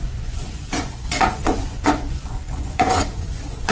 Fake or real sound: fake